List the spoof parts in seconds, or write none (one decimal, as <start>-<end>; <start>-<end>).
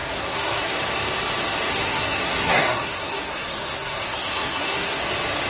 0.0-0.7; 1.7-5.0